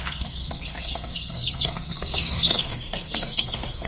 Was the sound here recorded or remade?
remade